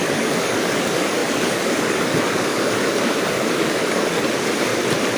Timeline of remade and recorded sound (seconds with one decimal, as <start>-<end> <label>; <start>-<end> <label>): 0.0-4.7 remade; 4.7-5.2 recorded